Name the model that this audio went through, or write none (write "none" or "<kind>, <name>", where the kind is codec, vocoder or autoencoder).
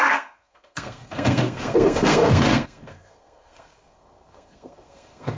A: codec, SNAC